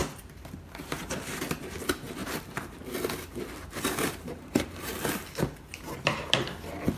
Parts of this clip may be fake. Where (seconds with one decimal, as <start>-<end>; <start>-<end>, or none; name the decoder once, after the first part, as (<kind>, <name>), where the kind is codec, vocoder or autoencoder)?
2.2-2.8 (vocoder, BigVGAN v2); 3.6-4.9

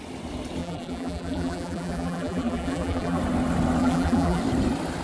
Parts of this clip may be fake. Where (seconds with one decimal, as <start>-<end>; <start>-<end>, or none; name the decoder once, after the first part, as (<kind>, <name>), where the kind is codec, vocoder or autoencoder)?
0.6-3.2 (vocoder, BigVGAN v2); 3.8-4.4

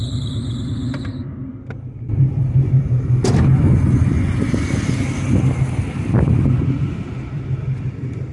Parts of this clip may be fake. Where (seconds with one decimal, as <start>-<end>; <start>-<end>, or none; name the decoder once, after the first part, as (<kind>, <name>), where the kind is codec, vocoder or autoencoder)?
0.0-3.5 (vocoder, BigVGAN v2); 5.7-8.3

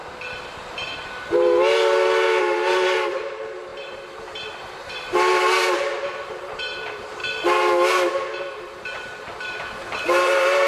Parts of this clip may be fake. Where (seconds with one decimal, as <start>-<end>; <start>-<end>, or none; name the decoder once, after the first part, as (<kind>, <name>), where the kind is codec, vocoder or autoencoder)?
2.4-7.2 (vocoder, BigVGAN v2); 8.4-10.7